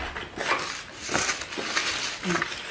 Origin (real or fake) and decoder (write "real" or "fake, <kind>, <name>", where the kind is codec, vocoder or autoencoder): real